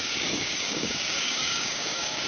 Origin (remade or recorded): remade